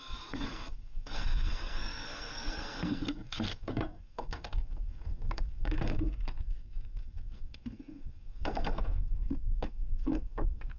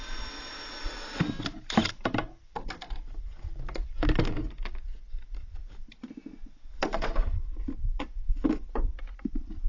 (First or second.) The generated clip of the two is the first